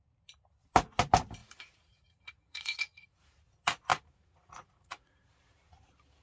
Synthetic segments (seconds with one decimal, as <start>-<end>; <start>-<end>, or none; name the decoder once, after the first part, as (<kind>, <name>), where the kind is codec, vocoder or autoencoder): 1.4-3.3 (vocoder, Vocos); 3.9-5.2